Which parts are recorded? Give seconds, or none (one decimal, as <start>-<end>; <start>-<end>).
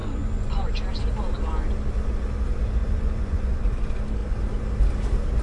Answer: 0.7-2.8; 3.6-5.4